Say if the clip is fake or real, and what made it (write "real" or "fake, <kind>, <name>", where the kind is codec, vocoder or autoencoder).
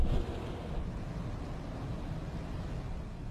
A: real